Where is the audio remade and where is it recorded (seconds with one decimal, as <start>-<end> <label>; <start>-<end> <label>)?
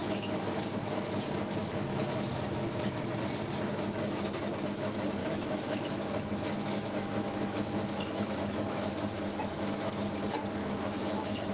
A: 0.0-1.1 remade; 1.1-1.6 recorded; 1.6-3.1 remade; 3.1-5.2 recorded; 5.2-9.9 remade; 9.9-10.6 recorded; 10.6-11.5 remade